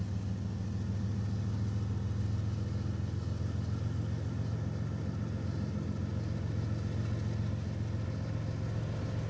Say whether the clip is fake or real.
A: real